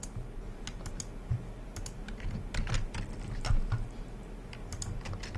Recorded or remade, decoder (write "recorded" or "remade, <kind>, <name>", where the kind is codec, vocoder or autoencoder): recorded